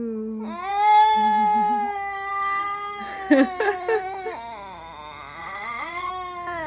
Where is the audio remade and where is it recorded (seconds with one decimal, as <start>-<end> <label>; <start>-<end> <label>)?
0.0-5.4 recorded; 5.4-6.1 remade; 6.1-6.7 recorded

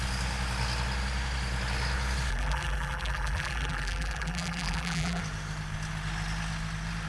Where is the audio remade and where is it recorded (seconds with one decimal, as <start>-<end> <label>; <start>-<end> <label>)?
0.0-2.3 recorded; 2.3-5.2 remade; 5.2-7.1 recorded

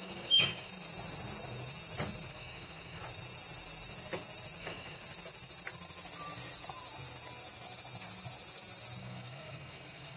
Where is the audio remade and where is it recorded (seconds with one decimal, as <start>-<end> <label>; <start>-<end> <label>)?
0.0-0.7 remade; 0.7-2.3 recorded; 2.3-3.0 remade; 3.0-4.6 recorded; 4.6-5.0 remade; 5.0-9.0 recorded; 9.0-10.2 remade